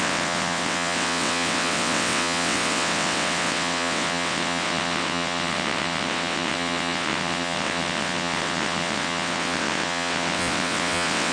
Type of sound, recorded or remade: remade